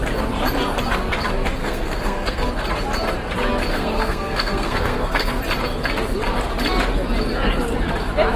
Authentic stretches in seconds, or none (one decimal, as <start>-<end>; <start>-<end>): 0.0-1.6; 2.5-3.7; 5.4-8.4